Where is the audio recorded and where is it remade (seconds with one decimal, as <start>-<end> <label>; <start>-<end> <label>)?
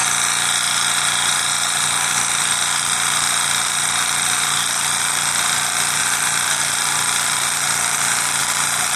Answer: 0.0-0.6 recorded; 0.6-1.4 remade; 1.4-2.1 recorded; 2.1-9.0 remade